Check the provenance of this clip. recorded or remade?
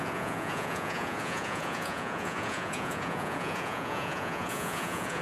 remade